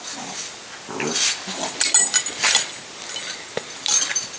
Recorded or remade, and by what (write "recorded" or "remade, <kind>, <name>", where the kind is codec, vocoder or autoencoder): recorded